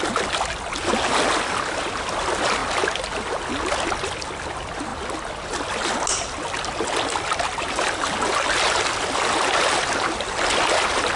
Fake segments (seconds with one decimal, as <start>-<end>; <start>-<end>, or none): none